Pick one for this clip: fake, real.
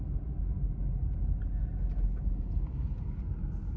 real